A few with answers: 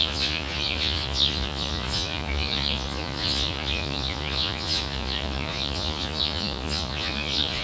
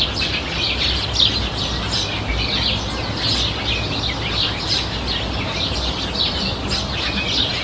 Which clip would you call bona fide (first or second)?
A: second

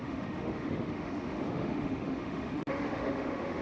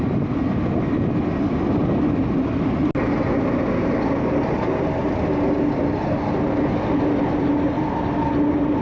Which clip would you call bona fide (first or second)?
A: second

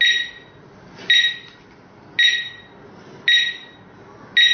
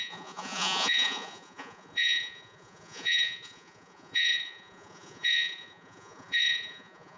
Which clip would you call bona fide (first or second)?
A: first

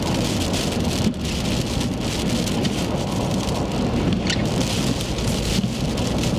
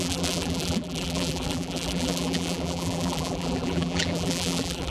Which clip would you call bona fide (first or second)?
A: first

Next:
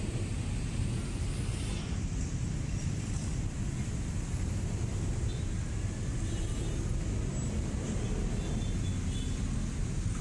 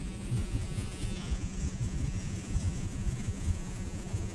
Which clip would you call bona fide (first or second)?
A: first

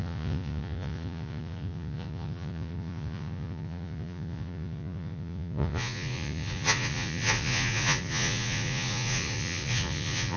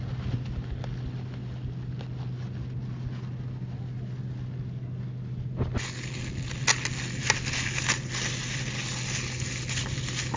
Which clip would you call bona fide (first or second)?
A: second